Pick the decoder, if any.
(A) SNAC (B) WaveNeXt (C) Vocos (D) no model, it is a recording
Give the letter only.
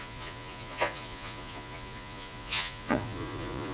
C